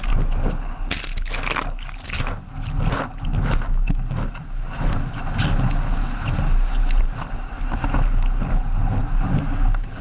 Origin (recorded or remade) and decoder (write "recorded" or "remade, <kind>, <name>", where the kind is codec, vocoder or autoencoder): recorded